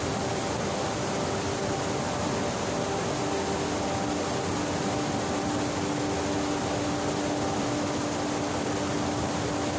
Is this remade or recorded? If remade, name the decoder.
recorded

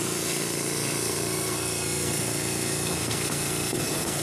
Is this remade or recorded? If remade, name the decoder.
remade, codec, SNAC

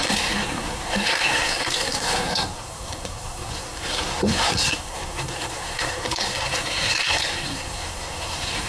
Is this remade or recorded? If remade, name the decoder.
remade, codec, SNAC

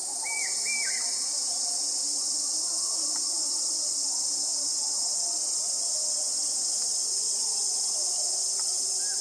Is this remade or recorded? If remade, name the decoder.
recorded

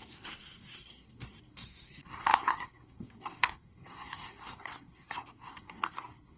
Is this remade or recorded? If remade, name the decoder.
remade, codec, SNAC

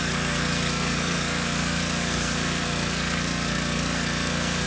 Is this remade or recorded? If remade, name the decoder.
remade, codec, SNAC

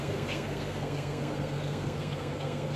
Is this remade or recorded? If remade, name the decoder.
remade, codec, SNAC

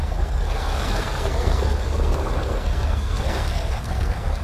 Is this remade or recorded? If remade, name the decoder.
remade, codec, SNAC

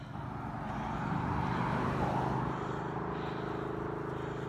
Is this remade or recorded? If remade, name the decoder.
recorded